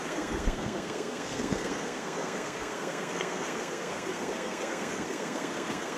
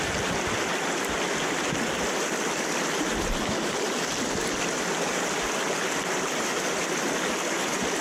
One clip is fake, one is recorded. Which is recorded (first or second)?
second